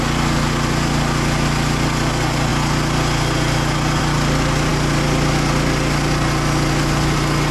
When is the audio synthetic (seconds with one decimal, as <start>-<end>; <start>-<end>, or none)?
none